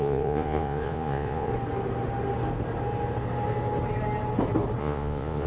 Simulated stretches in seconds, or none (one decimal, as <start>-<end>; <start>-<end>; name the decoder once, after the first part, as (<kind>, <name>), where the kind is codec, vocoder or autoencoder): 0.0-1.5 (vocoder, Vocos); 4.8-5.5